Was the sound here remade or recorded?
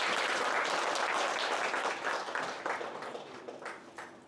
recorded